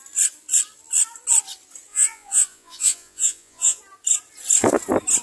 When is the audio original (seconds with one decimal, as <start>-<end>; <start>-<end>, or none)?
0.0-1.9; 3.8-5.2